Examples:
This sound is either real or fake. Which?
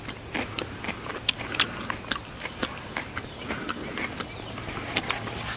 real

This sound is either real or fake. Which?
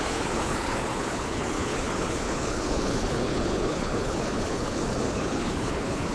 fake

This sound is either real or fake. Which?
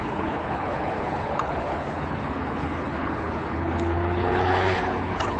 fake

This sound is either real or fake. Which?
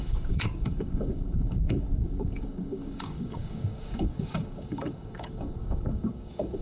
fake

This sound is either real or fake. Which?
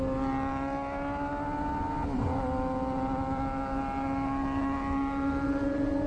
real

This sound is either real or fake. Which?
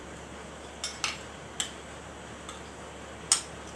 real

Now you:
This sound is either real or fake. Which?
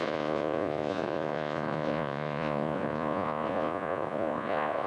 fake